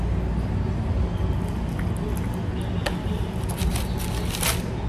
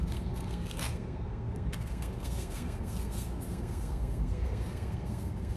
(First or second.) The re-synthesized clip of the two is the second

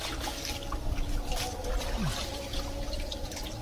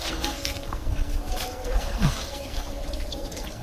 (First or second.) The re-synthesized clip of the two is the second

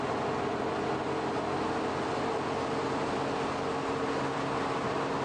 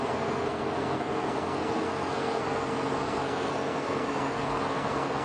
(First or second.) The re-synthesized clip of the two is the second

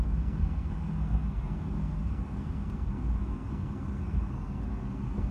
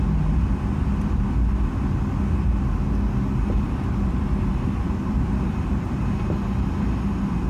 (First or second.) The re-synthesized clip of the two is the first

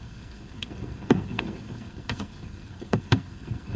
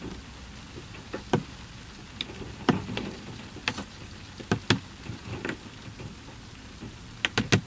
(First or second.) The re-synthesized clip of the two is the first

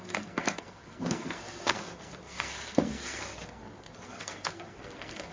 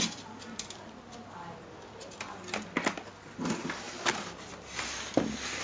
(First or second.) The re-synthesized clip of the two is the first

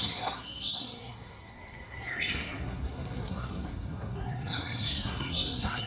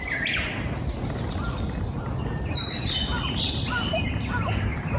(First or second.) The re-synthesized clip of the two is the first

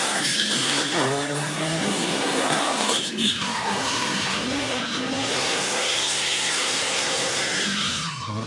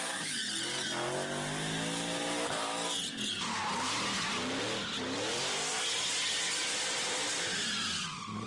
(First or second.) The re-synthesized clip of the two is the first